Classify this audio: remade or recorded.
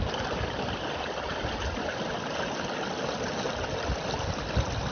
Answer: recorded